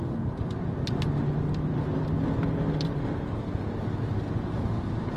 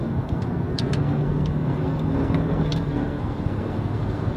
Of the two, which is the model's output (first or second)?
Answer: second